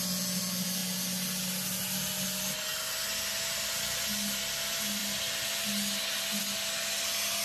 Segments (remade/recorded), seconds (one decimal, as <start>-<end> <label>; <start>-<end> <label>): 0.0-7.4 recorded